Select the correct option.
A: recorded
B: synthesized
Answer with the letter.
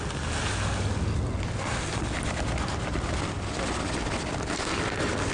A